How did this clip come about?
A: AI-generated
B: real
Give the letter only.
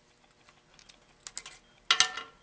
B